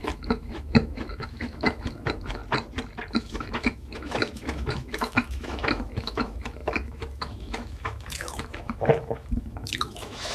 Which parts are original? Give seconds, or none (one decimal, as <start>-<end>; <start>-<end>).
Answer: 2.4-3.1

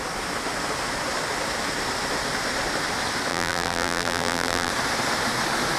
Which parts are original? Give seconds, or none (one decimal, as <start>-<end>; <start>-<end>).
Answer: 0.0-3.3; 4.7-5.8

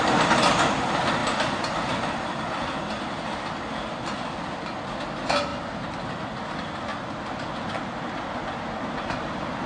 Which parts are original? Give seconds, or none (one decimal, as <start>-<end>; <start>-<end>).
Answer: 0.0-9.7